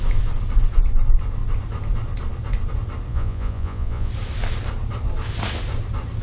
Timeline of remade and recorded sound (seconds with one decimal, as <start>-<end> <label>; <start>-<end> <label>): 0.0-3.1 recorded; 3.1-4.1 remade; 4.1-6.2 recorded